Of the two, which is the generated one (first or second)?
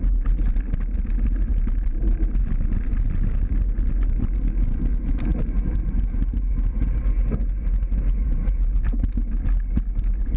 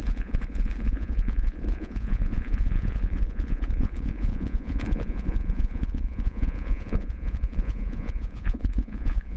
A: second